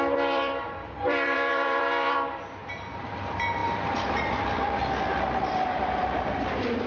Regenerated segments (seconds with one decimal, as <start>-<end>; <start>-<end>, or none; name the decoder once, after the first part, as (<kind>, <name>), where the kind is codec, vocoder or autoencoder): 0.0-2.6 (vocoder, BigVGAN v2); 3.1-4.8; 5.5-6.9